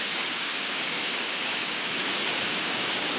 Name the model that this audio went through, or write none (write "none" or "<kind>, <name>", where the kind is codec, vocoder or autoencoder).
codec, DAC